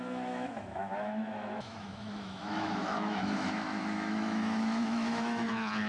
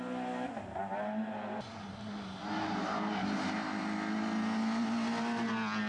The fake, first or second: first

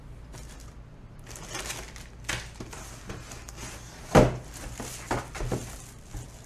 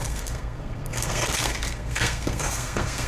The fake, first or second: second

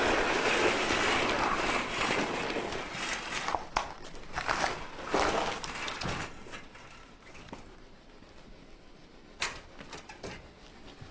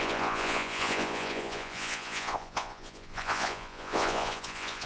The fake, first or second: second